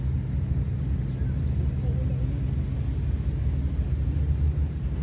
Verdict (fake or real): real